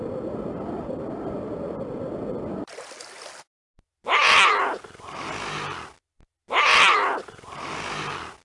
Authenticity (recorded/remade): recorded